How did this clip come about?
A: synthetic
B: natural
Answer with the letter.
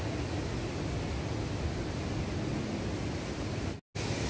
B